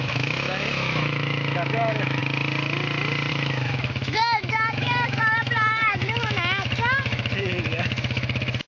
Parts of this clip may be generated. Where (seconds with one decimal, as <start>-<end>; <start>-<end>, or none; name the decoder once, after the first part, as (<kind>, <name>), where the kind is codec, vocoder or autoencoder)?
0.0-2.2 (autoencoder, DAC-VAE); 3.3-8.7